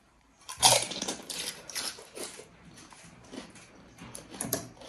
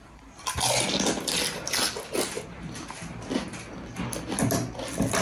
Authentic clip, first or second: second